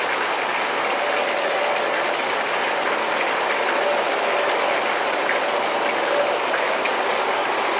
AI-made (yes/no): no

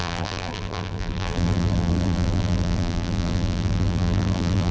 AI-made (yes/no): yes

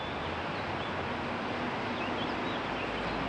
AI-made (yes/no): no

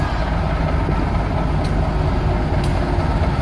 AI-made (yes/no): no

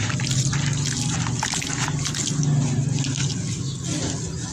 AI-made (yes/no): no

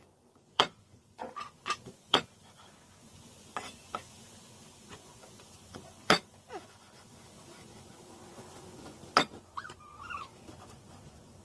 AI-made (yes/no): yes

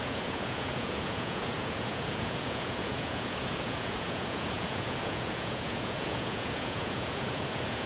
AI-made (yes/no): yes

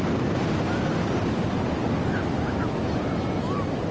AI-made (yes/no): no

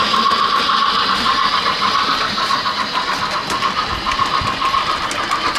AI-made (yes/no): no